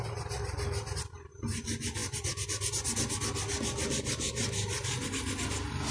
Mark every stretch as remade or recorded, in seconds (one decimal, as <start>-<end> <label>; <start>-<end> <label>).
0.0-5.9 recorded